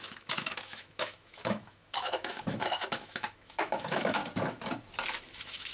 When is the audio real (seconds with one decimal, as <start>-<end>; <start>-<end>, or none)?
4.2-5.3